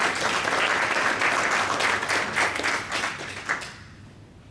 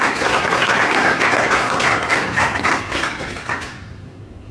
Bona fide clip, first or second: first